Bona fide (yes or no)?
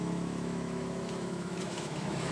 no